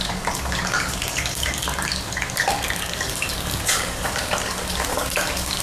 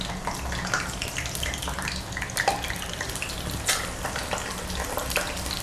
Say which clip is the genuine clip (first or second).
second